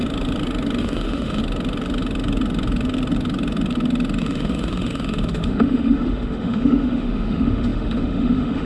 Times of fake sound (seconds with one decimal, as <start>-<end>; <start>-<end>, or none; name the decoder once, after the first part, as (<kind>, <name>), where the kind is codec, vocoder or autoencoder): 0.8-1.4 (autoencoder, DAC-VAE); 4.2-8.7